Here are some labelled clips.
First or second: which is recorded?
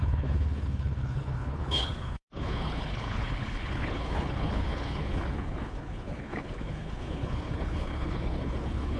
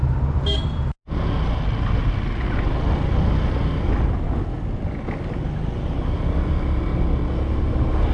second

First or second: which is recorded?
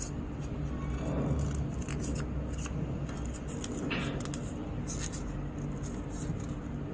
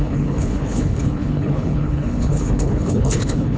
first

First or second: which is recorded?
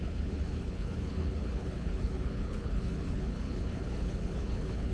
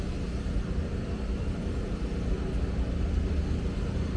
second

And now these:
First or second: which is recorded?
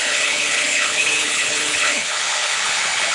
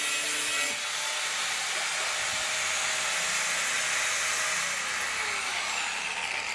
second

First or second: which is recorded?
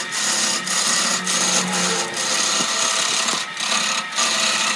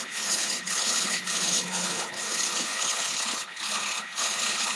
first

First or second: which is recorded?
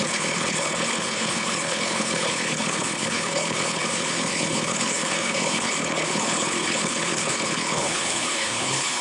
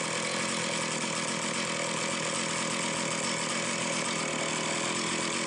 second